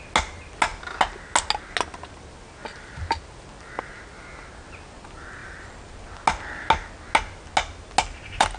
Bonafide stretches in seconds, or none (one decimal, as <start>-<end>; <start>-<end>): 0.0-8.6